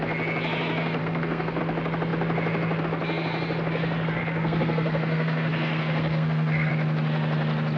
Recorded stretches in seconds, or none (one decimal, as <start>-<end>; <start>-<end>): 0.0-1.0; 1.6-4.2; 6.7-7.8